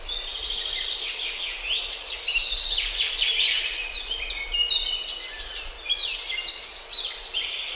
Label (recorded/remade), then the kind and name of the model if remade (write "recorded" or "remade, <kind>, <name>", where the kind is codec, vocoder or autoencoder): recorded